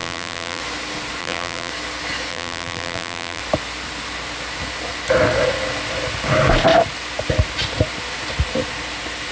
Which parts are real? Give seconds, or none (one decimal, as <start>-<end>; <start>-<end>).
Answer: 0.6-1.2; 1.7-2.3; 3.4-9.3

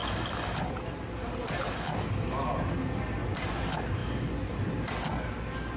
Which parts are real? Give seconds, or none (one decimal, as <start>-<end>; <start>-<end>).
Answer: 0.0-5.8

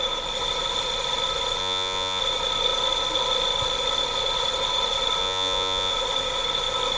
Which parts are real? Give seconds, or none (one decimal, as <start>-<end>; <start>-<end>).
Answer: 0.0-1.6; 2.2-5.2; 5.9-7.0

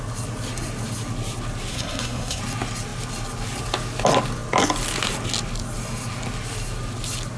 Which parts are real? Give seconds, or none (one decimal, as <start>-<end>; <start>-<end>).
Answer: 0.0-1.7; 2.4-7.4

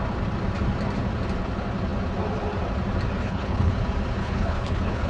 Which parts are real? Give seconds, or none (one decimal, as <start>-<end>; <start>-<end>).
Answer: 0.0-3.2; 3.7-4.2